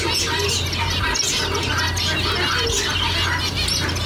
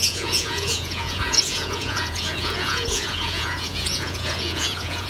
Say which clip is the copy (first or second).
second